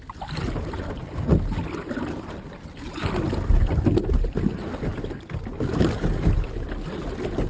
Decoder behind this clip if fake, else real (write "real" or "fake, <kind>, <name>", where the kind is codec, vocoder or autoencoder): real